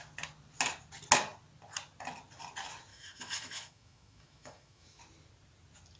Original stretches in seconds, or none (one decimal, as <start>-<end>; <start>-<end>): 0.0-2.9; 5.0-6.0

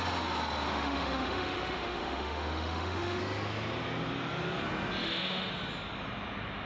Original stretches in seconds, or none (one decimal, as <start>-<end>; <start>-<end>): 0.0-0.7; 3.2-5.0; 5.5-6.7